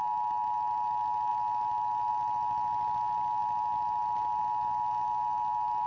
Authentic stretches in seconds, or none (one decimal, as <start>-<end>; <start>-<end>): 0.0-5.9